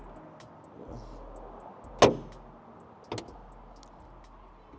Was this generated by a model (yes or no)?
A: no